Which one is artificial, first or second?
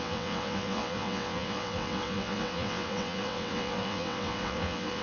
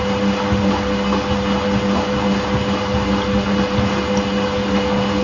first